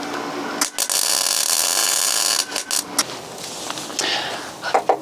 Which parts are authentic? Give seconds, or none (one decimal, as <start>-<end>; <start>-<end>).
0.0-5.0